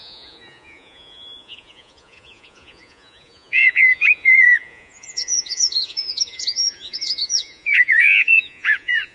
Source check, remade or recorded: remade